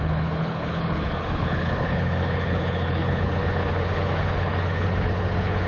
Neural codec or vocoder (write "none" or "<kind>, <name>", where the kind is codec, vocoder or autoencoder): codec, HILCodec